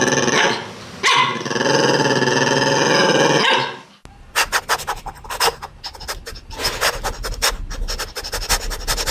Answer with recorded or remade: recorded